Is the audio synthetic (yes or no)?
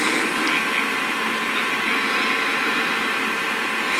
no